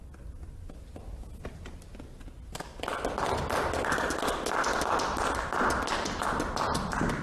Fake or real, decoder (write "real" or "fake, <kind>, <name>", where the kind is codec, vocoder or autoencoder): real